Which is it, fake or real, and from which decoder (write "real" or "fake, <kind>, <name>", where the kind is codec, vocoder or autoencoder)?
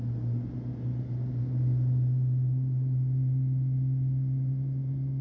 real